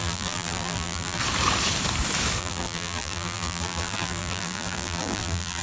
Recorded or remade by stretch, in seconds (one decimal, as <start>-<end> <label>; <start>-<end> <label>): 0.0-1.2 remade; 1.2-2.4 recorded; 2.4-5.6 remade